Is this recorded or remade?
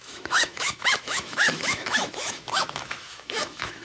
remade